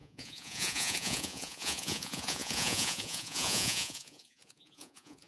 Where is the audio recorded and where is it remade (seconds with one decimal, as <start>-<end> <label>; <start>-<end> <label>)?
0.0-5.3 remade